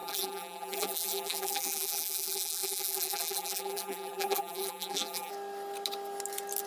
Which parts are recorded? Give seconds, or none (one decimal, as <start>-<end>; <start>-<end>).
5.3-6.7